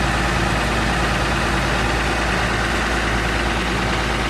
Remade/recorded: recorded